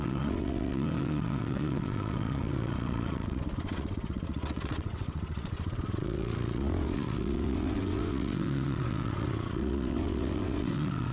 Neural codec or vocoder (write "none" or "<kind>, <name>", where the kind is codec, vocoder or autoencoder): vocoder, WaveNeXt